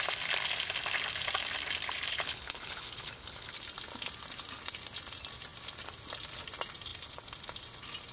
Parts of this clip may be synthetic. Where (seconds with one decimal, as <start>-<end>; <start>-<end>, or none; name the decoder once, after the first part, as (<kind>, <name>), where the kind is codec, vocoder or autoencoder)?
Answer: 2.1-3.5 (codec, HILCodec)

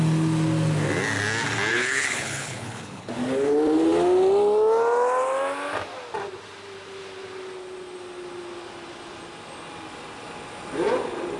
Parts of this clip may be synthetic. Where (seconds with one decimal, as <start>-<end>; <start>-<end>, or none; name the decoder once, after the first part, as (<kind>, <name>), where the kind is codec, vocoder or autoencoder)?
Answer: 1.7-3.1 (codec, HILCodec)

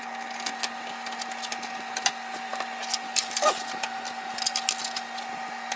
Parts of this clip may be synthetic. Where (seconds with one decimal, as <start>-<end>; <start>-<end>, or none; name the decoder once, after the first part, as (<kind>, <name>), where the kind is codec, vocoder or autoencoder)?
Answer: none

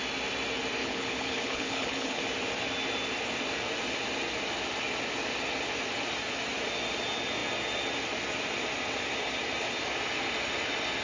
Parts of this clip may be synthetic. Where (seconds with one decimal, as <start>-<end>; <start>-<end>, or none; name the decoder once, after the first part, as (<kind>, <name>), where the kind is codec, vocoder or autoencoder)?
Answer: 0.8-2.2 (codec, HILCodec)

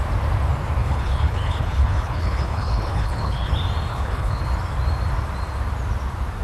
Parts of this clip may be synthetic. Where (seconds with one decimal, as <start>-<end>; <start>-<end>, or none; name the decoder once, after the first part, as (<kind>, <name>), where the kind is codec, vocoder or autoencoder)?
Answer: 0.8-3.5 (codec, HILCodec); 3.9-4.4

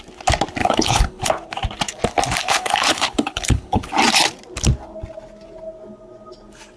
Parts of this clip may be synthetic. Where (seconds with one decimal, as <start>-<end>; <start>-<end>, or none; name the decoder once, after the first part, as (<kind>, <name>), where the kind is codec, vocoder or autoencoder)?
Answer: 0.6-1.3 (codec, HILCodec); 2.4-3.9

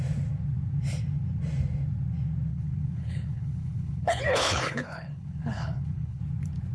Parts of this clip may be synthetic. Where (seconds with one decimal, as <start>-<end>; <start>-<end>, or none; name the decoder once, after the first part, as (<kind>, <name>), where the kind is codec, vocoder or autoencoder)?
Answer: 2.5-6.2 (codec, HILCodec)